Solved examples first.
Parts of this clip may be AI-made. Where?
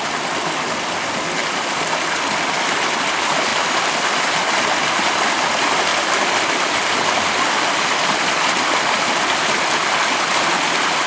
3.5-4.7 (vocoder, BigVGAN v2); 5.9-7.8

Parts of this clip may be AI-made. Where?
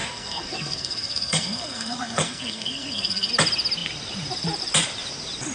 0.0-3.3 (codec, SNAC)